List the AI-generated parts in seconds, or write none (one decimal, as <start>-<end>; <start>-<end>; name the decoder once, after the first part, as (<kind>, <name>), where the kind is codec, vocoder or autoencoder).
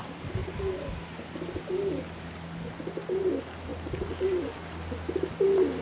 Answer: none